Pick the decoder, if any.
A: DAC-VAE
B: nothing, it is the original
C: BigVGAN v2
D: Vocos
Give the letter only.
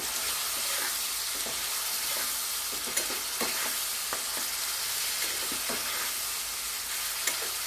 B